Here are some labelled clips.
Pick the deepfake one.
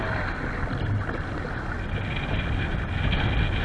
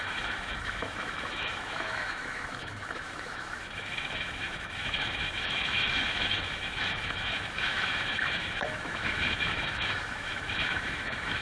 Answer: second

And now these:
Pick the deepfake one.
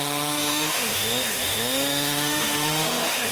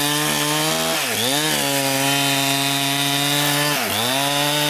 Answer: first